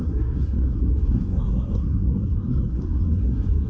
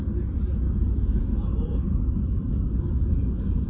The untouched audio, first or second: second